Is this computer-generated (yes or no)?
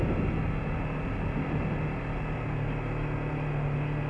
no